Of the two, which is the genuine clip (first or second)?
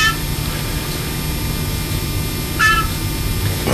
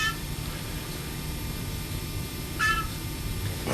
first